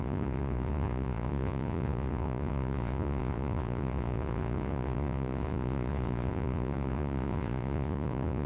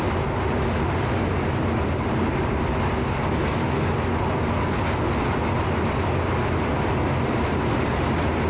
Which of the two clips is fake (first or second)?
first